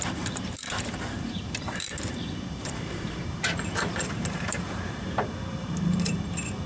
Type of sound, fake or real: fake